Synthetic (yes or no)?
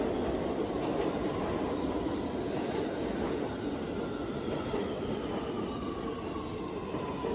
no